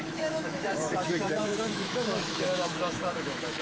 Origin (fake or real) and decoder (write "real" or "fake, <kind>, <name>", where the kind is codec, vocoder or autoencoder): fake, autoencoder, DAC-VAE